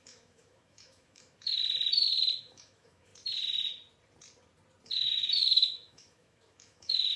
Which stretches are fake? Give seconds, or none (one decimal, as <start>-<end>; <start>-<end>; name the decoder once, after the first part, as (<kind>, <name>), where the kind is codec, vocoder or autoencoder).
0.0-1.6 (autoencoder, DAC-VAE); 2.4-3.1; 4.9-7.2